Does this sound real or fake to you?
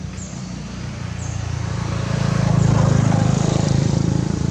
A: fake